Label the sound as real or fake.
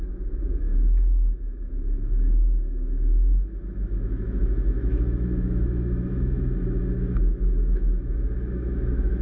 fake